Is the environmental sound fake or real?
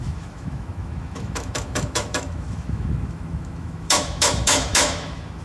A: fake